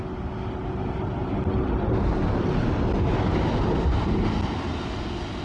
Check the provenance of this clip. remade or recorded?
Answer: recorded